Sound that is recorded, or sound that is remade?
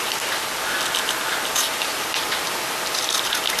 recorded